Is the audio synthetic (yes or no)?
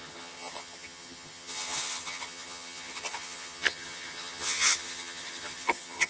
yes